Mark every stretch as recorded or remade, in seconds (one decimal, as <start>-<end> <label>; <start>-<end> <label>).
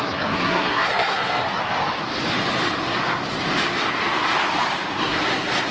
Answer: 0.0-1.6 remade; 1.6-5.0 recorded; 5.0-5.7 remade